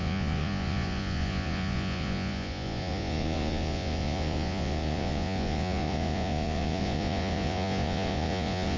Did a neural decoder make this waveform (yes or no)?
yes